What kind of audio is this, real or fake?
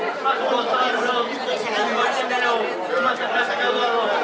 real